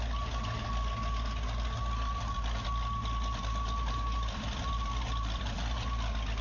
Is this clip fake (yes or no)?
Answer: no